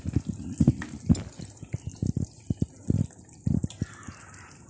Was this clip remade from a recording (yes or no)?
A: no